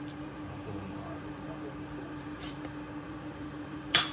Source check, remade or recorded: remade